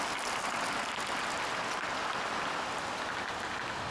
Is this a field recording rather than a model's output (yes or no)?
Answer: yes